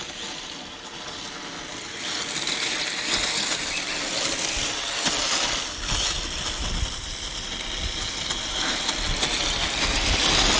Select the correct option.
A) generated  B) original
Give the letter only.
B